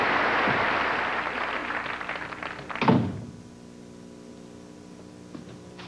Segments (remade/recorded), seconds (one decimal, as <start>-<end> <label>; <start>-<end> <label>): 0.0-5.9 recorded